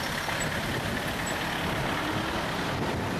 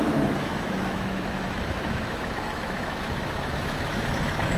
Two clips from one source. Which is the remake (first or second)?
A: second